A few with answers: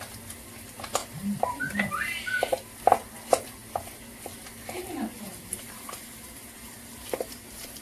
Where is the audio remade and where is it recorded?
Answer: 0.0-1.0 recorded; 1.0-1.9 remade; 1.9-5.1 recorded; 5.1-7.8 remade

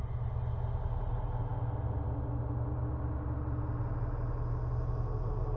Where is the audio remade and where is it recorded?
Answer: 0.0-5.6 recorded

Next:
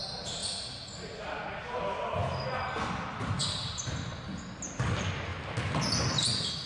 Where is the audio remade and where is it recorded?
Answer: 0.0-6.7 recorded

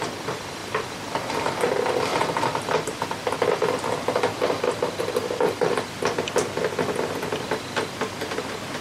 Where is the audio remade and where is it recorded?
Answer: 0.0-0.6 recorded; 0.6-1.7 remade; 1.7-8.8 recorded